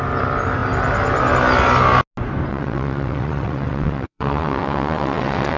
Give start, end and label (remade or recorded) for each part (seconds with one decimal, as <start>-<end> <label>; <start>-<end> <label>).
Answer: 0.0-2.5 recorded; 2.5-5.6 remade